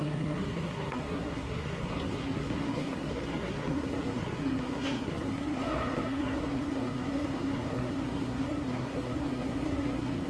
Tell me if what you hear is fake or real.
fake